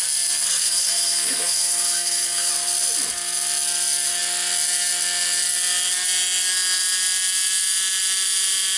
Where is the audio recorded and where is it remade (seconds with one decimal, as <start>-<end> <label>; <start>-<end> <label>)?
0.0-0.6 recorded; 0.6-2.5 remade; 2.5-8.8 recorded